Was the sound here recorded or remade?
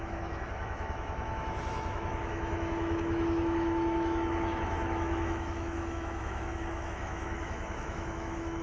remade